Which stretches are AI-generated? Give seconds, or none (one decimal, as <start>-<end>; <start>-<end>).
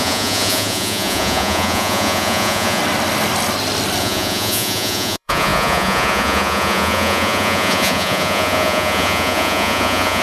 0.0-2.8; 4.0-10.2